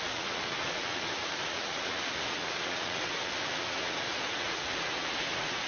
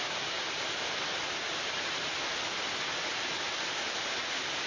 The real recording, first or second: second